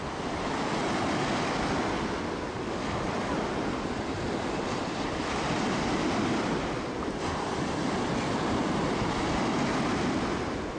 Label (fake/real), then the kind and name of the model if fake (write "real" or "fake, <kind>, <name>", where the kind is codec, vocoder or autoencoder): real